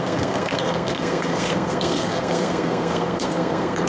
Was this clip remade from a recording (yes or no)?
yes